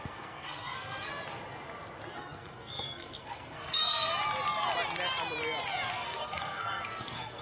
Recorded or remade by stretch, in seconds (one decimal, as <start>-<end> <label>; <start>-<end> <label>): 0.0-1.1 remade; 1.1-2.1 recorded; 2.1-4.1 remade; 4.1-5.9 recorded; 5.9-7.4 remade